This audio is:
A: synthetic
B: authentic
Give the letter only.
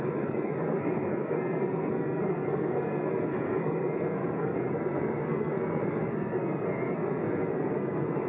A